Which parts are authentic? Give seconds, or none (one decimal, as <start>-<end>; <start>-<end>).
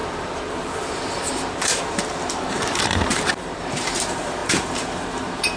none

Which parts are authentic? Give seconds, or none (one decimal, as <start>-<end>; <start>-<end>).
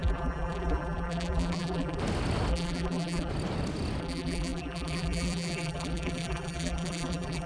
2.0-2.5; 3.3-4.0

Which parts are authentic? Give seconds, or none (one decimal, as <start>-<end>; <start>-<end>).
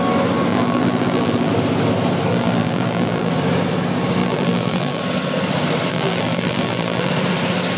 0.0-0.5; 1.5-2.3; 3.3-4.2; 5.0-5.9; 7.1-7.8